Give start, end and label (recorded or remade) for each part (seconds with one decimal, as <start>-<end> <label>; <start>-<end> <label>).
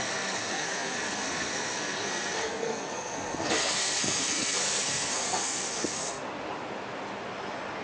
0.0-6.2 remade; 6.2-7.8 recorded